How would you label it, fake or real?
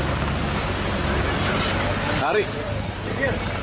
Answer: real